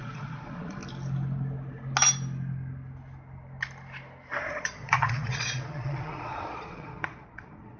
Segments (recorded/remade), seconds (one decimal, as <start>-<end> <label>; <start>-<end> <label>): 0.0-0.8 remade; 0.8-4.4 recorded; 4.4-7.8 remade